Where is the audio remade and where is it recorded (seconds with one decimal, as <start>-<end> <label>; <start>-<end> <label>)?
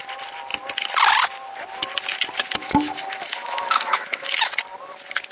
0.0-2.6 recorded; 2.6-4.5 remade; 4.5-5.3 recorded